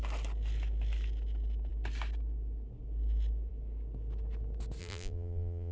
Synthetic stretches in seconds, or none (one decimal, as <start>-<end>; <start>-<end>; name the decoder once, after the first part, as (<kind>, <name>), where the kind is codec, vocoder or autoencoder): 4.8-5.7 (vocoder, BigVGAN v2)